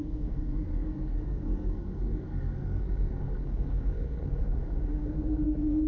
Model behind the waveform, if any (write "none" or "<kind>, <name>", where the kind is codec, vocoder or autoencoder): codec, SNAC